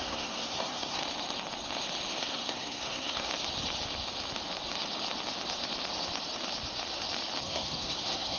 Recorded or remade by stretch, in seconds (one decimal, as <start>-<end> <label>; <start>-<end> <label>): 0.0-1.0 remade; 1.0-2.2 recorded; 2.2-3.3 remade; 3.3-7.4 recorded; 7.4-8.4 remade